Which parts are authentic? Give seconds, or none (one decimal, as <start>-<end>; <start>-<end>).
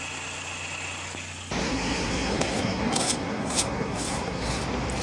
0.0-1.6; 4.6-5.0